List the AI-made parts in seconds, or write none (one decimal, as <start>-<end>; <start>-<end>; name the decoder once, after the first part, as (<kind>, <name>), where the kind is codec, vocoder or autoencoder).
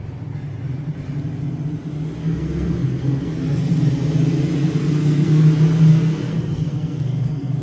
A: 2.2-3.7 (codec, SNAC); 4.8-5.4; 5.9-7.6